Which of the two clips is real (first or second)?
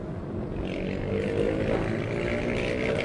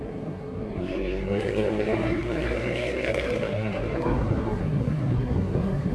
first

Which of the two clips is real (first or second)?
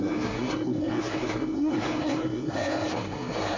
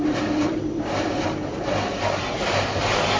second